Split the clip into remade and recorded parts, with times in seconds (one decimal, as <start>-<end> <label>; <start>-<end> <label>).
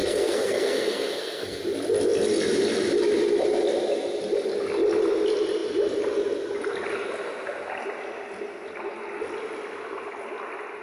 0.0-1.6 remade; 1.6-10.8 recorded